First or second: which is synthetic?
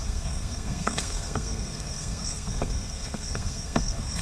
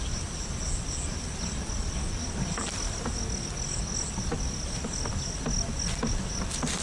first